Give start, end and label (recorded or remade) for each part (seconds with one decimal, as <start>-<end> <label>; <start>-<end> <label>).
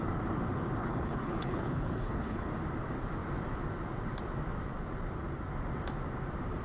0.0-0.8 recorded; 0.8-2.5 remade; 2.5-6.6 recorded